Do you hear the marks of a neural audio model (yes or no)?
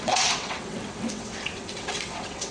yes